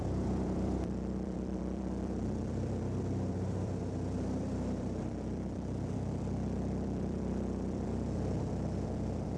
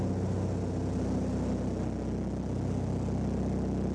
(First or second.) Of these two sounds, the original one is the second